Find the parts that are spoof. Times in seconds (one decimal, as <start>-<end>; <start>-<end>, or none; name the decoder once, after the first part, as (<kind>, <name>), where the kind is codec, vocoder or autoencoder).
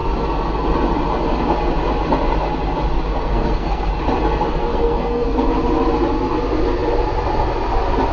3.1-3.9 (codec, SNAC); 4.6-5.5